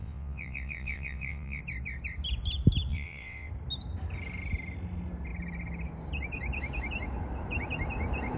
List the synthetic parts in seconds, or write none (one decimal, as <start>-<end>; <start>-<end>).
0.0-1.6; 2.9-3.5